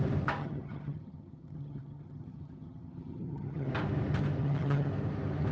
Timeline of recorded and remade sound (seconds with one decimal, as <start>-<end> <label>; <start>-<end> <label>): 0.0-0.4 recorded; 0.4-3.7 remade; 3.7-4.4 recorded; 4.4-4.9 remade; 4.9-5.5 recorded